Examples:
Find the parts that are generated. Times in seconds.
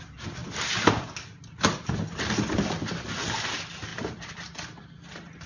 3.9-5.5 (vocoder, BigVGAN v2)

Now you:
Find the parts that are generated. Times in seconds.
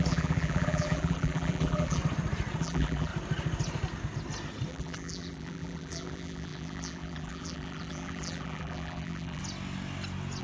0.0-2.0 (vocoder, BigVGAN v2); 2.6-3.1; 4.7-9.4